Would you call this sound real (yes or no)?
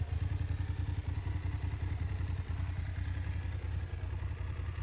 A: yes